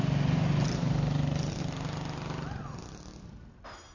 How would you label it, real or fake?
real